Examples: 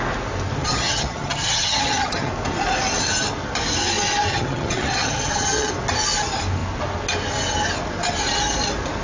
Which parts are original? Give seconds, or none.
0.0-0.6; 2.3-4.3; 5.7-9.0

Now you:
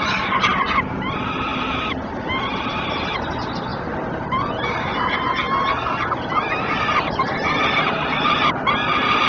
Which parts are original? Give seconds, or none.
0.0-9.3